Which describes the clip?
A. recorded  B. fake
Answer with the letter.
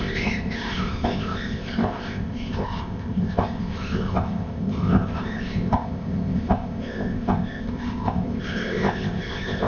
B